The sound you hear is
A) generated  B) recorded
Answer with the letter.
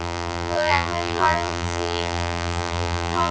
A